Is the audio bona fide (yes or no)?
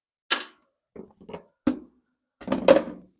yes